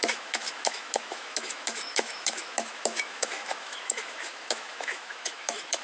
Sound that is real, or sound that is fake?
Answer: fake